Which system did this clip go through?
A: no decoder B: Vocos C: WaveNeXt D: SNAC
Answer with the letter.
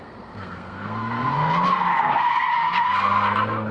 D